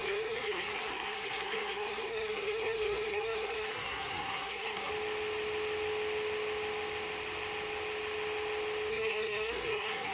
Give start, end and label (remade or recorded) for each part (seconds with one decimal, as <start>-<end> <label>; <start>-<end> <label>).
0.0-4.9 remade; 4.9-8.9 recorded; 8.9-10.1 remade

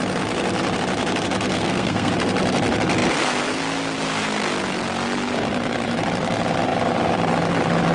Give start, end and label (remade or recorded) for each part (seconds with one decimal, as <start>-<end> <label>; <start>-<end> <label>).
0.0-1.5 recorded; 1.5-2.1 remade; 2.1-7.9 recorded